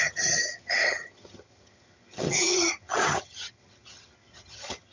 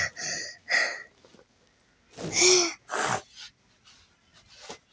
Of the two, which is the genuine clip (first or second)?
second